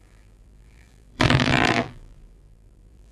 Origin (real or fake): fake